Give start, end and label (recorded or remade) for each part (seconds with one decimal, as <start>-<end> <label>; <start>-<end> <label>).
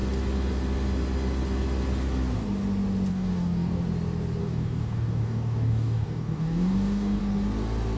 0.0-3.1 recorded; 3.1-3.8 remade; 3.8-4.4 recorded; 4.4-7.2 remade; 7.2-8.0 recorded